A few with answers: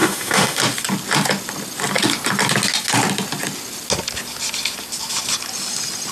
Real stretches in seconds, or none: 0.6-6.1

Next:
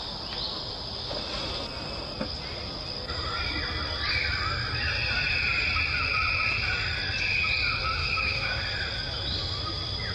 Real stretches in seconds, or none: 0.0-8.0; 8.6-10.1

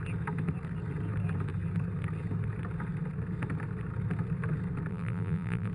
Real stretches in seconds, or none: 0.0-4.9

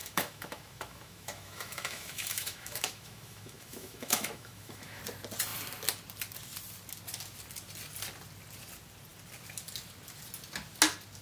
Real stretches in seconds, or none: 5.0-11.2

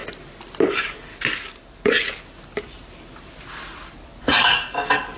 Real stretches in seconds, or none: 0.0-0.7; 1.1-4.2

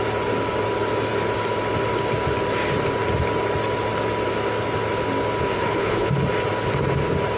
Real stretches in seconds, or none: 0.0-5.5; 6.1-7.4

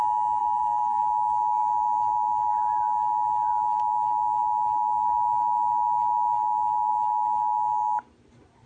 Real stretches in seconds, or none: 0.0-0.4; 1.0-8.7